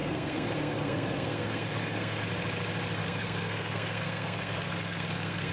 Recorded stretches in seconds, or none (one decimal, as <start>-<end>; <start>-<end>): 2.2-3.0